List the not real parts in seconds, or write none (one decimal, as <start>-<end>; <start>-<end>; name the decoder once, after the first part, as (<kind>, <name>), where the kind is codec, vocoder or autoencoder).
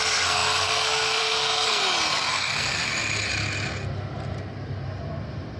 0.0-1.8 (codec, SNAC); 2.3-2.8